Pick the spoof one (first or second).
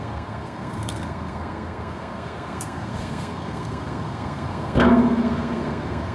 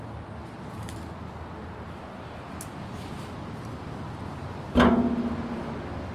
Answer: first